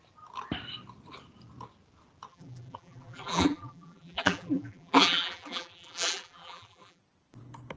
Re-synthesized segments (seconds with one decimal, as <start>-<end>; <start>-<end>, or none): 2.3-7.0